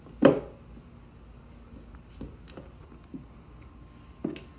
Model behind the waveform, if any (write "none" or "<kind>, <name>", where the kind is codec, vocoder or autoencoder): none